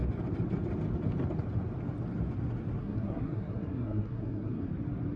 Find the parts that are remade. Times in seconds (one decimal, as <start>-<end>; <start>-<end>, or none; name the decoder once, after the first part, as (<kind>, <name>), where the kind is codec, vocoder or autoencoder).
2.8-4.7 (codec, SNAC)